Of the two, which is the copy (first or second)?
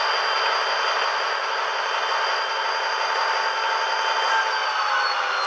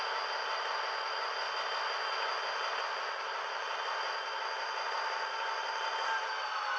second